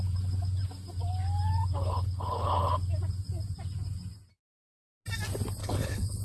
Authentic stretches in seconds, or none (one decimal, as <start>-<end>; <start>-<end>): 0.0-1.8; 2.7-5.6